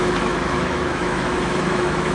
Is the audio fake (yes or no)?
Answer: yes